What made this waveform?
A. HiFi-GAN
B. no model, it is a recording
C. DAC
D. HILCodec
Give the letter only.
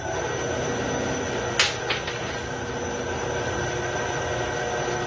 B